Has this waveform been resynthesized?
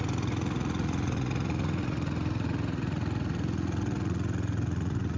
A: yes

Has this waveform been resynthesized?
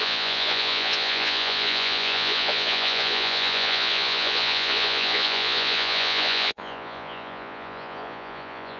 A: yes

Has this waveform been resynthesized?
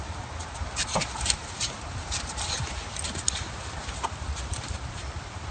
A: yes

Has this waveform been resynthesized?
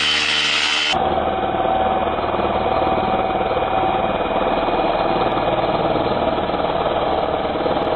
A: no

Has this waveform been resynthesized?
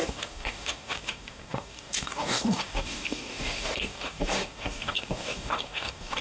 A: yes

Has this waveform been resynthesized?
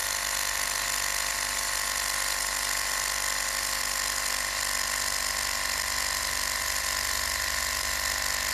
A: no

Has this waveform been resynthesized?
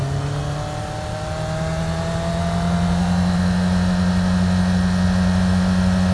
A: no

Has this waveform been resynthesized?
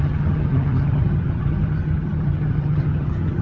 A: yes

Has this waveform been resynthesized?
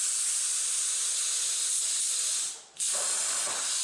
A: no